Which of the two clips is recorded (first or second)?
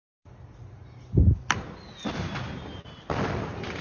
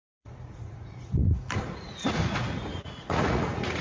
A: first